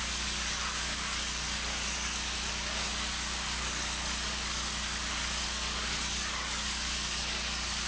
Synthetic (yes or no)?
yes